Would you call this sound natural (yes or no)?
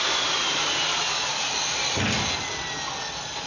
yes